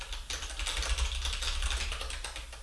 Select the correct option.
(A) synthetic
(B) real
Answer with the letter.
B